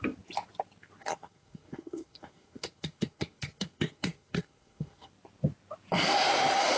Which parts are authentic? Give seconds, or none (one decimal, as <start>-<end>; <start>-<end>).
0.0-1.0; 5.1-6.8